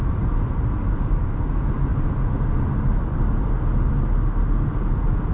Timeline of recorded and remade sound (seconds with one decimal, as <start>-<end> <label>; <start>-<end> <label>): 0.0-0.8 recorded; 0.8-1.5 remade; 1.5-5.3 recorded